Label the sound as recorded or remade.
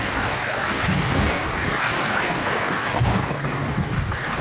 remade